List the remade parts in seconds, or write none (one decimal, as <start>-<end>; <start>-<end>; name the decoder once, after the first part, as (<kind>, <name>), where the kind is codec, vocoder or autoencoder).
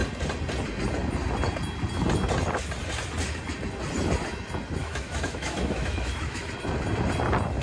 4.8-6.5 (autoencoder, DAC-VAE)